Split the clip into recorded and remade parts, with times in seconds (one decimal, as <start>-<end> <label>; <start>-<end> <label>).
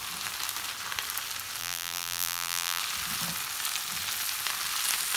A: 0.0-1.6 recorded; 1.6-2.8 remade; 2.8-5.2 recorded